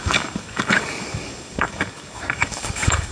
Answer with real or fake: fake